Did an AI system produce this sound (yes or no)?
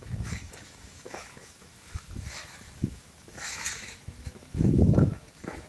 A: yes